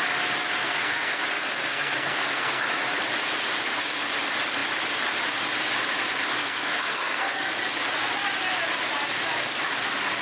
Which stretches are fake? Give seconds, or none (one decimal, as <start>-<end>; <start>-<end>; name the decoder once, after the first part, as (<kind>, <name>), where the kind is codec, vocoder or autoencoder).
0.6-1.2 (codec, SNAC); 1.7-2.6; 6.4-7.5